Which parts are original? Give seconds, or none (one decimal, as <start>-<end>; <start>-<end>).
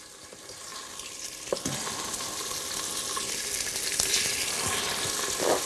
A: 0.0-5.7